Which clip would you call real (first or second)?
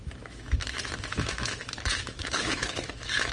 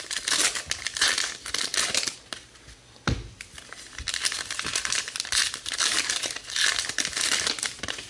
second